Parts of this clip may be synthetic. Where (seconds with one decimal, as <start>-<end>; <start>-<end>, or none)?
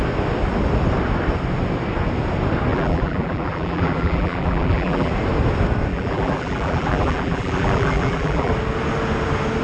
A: 2.7-5.1; 5.9-8.5